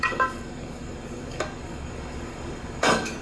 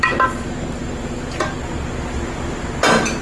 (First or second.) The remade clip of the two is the first